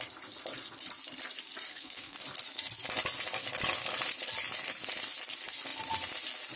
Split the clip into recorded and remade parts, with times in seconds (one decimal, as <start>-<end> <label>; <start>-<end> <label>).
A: 0.0-1.7 recorded; 1.7-2.2 remade; 2.2-6.6 recorded